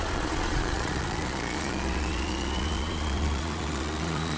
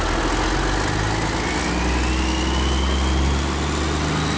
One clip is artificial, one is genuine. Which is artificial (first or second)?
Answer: first